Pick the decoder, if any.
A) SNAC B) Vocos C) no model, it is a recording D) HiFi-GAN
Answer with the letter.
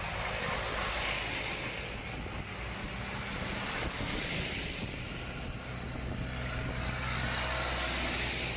C